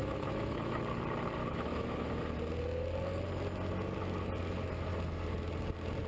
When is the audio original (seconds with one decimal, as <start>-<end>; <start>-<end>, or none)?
0.8-1.4; 2.2-6.1